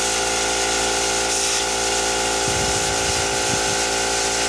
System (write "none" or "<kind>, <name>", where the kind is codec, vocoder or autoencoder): none